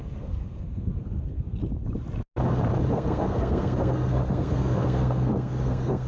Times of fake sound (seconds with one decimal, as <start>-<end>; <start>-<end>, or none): 0.0-1.6; 2.9-6.1